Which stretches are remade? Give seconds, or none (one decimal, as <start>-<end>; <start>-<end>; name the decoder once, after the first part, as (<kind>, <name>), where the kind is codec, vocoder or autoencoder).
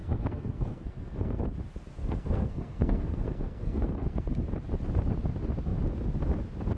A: 0.0-1.4 (codec, SNAC); 2.0-4.3